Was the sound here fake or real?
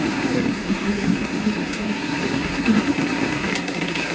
fake